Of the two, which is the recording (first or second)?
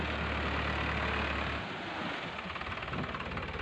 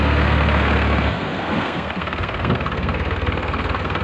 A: first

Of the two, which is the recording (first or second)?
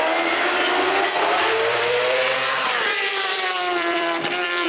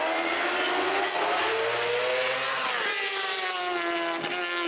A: second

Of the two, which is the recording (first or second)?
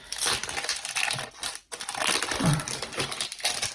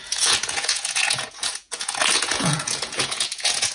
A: first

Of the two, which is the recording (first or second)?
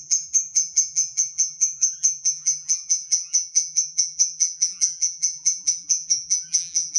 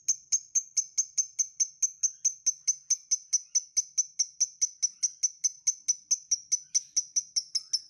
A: second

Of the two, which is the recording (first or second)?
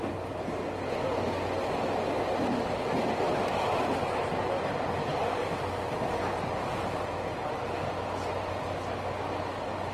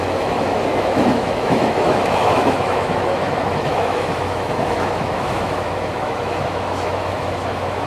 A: first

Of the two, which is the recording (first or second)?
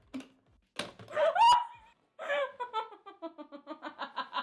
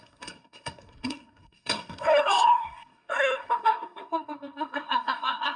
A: first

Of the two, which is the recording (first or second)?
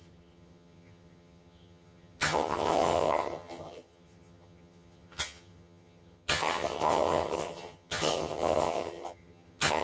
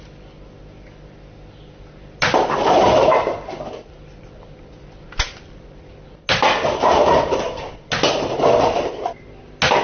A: second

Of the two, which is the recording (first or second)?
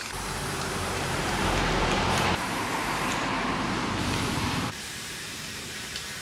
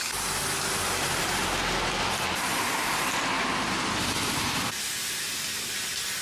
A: second